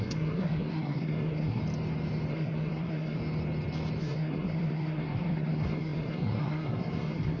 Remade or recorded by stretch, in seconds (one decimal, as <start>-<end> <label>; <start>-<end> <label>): 0.0-1.6 remade; 1.6-2.3 recorded; 2.3-3.2 remade; 3.2-4.0 recorded; 4.0-7.4 remade